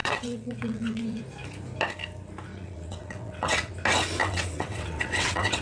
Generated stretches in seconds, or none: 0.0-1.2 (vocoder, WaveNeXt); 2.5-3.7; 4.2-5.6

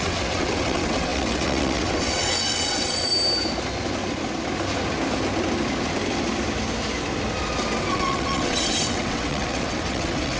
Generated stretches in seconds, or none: 0.0-3.1 (vocoder, WaveNeXt); 7.9-10.4

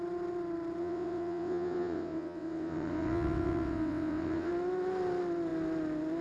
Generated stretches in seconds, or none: 0.8-4.5 (vocoder, WaveNeXt)

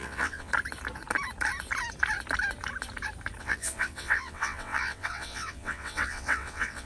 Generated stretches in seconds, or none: 0.0-0.5 (vocoder, WaveNeXt); 3.4-6.9

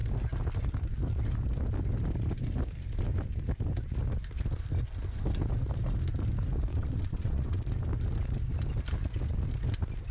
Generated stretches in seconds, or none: 6.7-7.6 (vocoder, WaveNeXt)

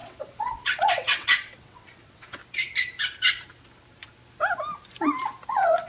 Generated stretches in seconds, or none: 0.0-2.4 (vocoder, WaveNeXt); 5.5-5.9

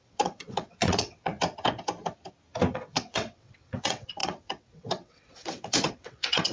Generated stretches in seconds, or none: 0.0-1.3 (vocoder, WaveNeXt); 2.7-6.5

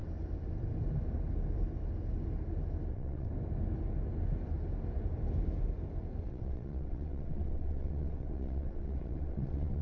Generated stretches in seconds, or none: 2.9-3.3 (vocoder, WaveNeXt); 6.2-9.8